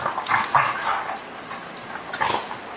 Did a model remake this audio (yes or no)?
no